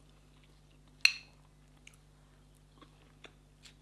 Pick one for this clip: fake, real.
real